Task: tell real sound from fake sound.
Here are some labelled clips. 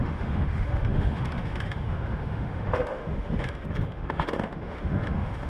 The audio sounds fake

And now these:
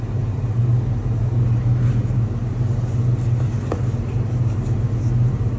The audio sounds real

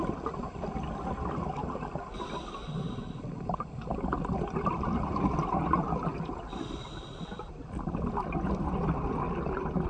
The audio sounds real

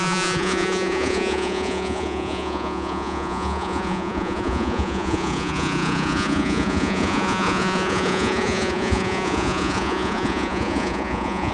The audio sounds fake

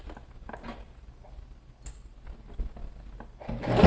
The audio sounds real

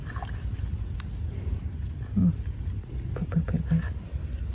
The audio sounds real